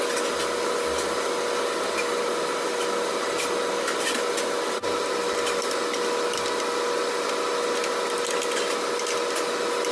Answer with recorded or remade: recorded